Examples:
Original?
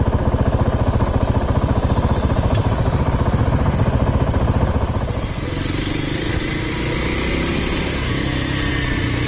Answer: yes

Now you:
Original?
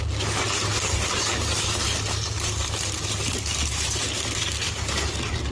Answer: yes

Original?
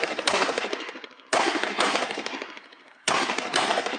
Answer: no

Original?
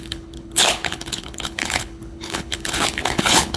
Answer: no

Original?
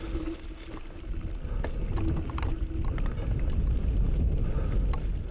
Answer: yes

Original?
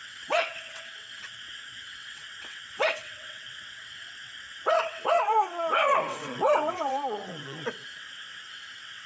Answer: no